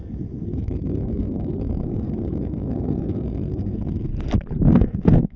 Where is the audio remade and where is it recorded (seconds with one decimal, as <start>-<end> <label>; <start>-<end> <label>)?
0.0-4.1 remade; 4.1-4.7 recorded; 4.7-5.4 remade